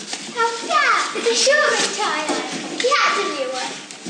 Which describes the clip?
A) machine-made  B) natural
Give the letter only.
B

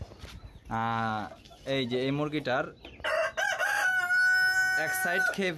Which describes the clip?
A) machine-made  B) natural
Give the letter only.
B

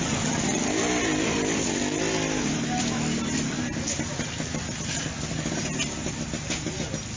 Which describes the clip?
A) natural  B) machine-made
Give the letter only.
A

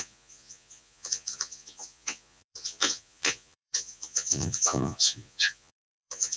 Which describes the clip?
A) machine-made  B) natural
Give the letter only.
A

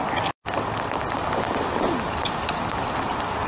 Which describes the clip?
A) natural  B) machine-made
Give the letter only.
A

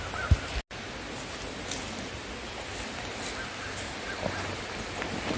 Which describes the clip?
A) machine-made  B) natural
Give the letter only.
B